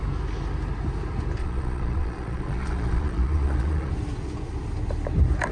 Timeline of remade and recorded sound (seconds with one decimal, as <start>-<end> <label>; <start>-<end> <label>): 0.0-1.4 recorded; 1.4-3.9 remade; 3.9-5.5 recorded